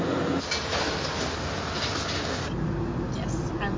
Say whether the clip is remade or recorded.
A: recorded